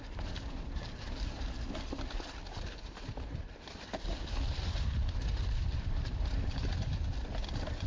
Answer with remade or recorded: remade